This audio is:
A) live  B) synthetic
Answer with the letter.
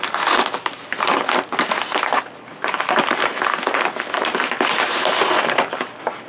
A